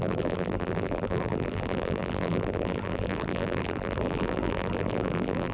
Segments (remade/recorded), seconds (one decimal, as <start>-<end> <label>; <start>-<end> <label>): 0.0-5.5 remade